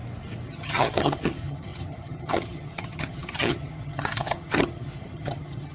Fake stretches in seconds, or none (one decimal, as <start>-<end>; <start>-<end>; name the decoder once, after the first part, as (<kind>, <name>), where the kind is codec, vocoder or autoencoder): 0.5-5.7 (vocoder, HiFi-GAN)